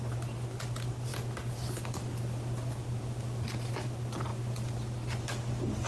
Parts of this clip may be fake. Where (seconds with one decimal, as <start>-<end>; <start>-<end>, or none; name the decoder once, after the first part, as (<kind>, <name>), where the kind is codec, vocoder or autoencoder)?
none

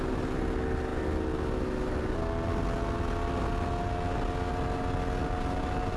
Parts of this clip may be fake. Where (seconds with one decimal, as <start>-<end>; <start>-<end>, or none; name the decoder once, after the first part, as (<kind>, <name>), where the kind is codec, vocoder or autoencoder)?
none

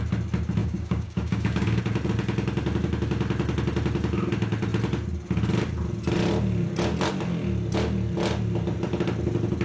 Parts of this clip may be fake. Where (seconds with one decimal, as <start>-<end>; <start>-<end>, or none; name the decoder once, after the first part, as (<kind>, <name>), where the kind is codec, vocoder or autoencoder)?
0.6-1.8 (codec, DAC)

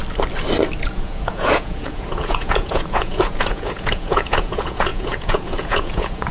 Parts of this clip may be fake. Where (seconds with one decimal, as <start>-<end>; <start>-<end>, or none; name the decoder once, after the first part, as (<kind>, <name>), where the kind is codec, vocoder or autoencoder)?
0.9-6.3 (vocoder, Vocos)

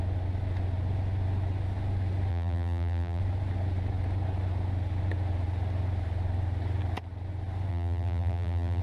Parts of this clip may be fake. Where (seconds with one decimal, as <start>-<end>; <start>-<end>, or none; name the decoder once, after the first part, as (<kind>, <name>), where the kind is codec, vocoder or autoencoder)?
2.3-3.2 (vocoder, BigVGAN v2); 7.7-8.8

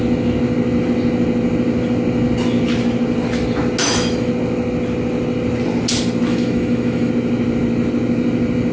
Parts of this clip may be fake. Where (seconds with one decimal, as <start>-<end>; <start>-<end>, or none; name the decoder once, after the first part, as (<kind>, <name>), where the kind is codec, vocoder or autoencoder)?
3.8-4.3 (autoencoder, DAC-VAE); 6.3-7.1